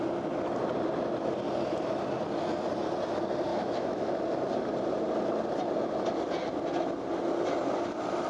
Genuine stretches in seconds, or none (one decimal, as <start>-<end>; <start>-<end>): 0.0-3.5; 4.1-8.3